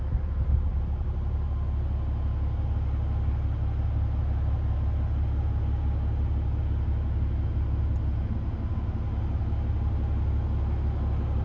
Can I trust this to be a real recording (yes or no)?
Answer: yes